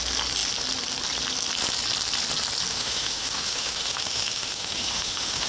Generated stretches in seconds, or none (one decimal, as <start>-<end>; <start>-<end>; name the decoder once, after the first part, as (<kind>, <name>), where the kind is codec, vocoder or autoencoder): 2.7-5.5 (autoencoder, DAC-VAE)